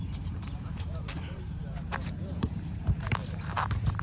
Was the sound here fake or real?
fake